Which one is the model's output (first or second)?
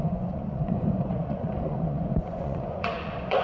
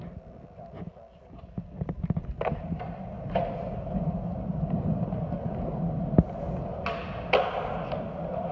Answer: first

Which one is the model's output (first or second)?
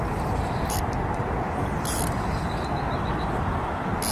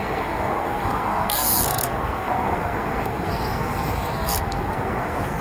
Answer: second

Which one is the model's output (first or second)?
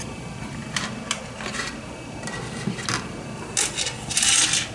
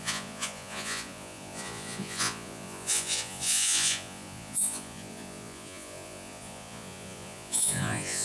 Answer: second